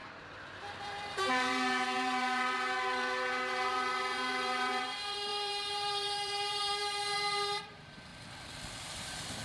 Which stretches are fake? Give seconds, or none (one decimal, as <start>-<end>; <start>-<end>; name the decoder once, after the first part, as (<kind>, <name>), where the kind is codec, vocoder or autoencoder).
0.8-8.1 (vocoder, BigVGAN v2); 8.8-9.4